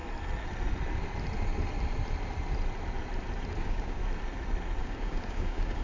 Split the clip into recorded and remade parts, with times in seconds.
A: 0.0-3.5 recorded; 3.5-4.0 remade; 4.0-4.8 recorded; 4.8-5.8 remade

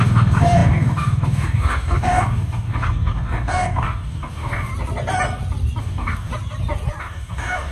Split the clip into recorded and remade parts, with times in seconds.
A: 0.0-4.7 remade; 4.7-5.8 recorded; 5.8-6.3 remade; 6.3-7.0 recorded; 7.0-7.7 remade